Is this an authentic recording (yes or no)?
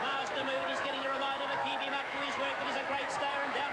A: no